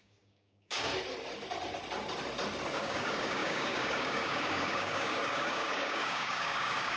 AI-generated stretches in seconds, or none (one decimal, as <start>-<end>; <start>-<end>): 0.0-0.9; 2.7-7.0

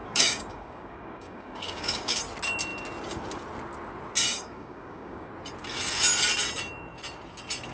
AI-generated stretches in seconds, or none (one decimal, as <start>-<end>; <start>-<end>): 0.0-2.2; 4.3-5.3

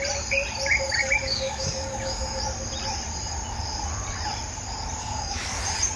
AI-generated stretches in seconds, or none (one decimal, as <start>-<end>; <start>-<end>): 1.0-2.4; 5.0-5.6

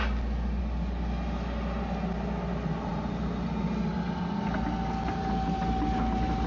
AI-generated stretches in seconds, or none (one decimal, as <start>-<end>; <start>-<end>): none

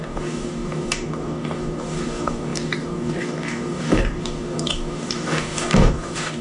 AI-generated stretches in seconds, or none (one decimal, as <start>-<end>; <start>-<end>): 0.0-6.4

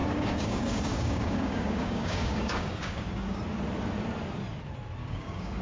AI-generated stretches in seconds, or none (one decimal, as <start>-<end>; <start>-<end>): 0.0-3.4; 5.0-5.6